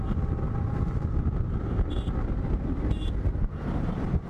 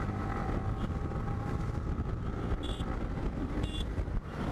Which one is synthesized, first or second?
first